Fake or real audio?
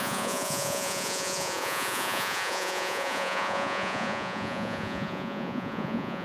fake